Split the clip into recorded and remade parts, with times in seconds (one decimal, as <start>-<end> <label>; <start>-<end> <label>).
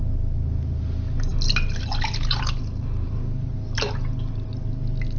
0.0-5.2 recorded